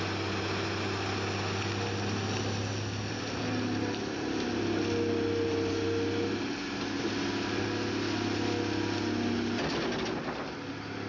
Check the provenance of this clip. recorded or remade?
recorded